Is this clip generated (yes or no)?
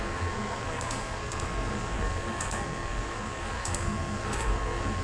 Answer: yes